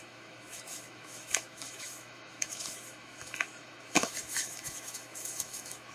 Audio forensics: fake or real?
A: fake